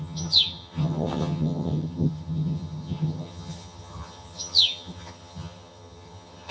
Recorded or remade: remade